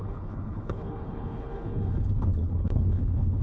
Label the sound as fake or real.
fake